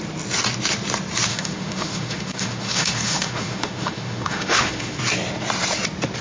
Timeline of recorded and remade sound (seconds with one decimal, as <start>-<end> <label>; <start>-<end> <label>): 0.0-1.3 recorded; 1.3-5.0 remade; 5.0-6.2 recorded